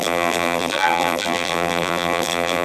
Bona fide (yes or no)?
no